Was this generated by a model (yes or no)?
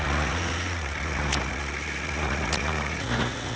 yes